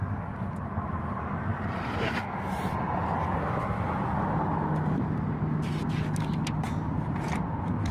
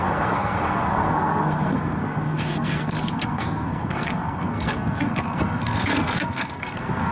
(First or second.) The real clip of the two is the first